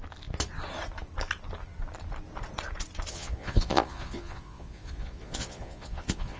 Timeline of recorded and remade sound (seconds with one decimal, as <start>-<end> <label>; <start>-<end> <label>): 0.0-3.1 recorded; 3.1-6.4 remade